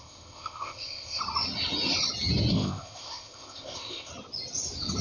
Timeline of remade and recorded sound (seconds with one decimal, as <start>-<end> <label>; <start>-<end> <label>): 0.0-1.2 remade; 1.2-2.5 recorded; 2.5-4.1 remade; 4.1-5.0 recorded